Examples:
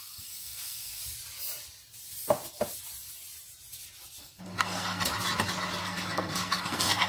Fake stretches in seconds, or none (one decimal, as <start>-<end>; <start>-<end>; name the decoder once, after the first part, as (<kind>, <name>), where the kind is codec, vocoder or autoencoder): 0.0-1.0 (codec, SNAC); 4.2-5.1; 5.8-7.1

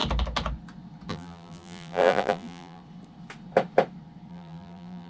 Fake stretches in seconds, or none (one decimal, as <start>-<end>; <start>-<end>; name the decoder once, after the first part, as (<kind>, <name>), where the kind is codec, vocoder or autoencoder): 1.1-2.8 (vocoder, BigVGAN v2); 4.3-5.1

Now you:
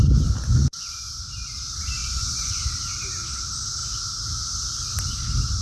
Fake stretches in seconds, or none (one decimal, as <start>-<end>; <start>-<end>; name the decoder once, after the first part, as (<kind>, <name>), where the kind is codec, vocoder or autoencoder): 0.5-1.1 (vocoder, Vocos); 2.0-2.6